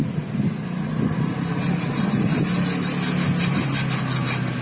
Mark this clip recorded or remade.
recorded